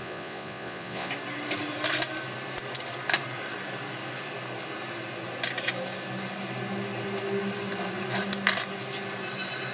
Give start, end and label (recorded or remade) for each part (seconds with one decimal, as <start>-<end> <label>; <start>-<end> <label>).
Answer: 0.0-1.1 remade; 1.1-9.7 recorded